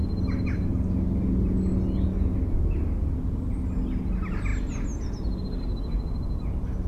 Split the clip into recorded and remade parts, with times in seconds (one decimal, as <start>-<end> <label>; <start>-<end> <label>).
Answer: 0.0-6.9 recorded